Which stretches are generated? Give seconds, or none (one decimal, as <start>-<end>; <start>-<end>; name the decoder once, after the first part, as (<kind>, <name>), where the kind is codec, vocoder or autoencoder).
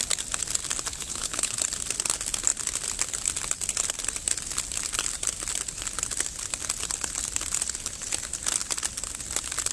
0.9-1.6 (codec, HILCodec)